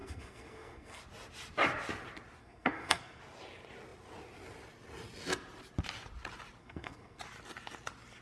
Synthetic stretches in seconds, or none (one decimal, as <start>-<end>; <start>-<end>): 0.0-1.0; 2.4-3.2; 6.6-7.2